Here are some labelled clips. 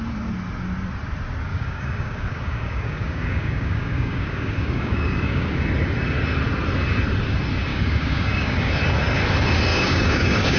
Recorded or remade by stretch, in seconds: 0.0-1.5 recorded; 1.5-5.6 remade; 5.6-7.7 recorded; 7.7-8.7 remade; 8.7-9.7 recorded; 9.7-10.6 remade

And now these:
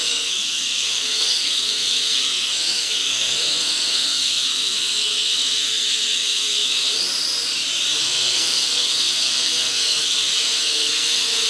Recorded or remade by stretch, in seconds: 0.0-6.9 remade; 6.9-8.0 recorded; 8.0-11.5 remade

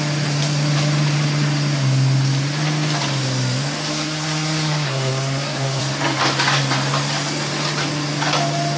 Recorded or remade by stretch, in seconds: 0.0-3.9 recorded; 3.9-5.8 remade; 5.8-8.8 recorded

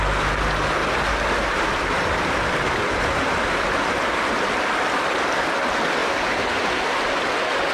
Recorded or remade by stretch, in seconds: 0.0-0.8 recorded; 0.8-4.1 remade; 4.1-6.0 recorded; 6.0-7.2 remade; 7.2-7.7 recorded